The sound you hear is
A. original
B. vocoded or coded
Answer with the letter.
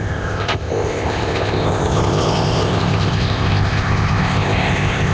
B